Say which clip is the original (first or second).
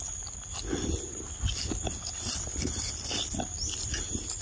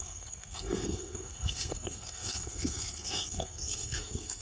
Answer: first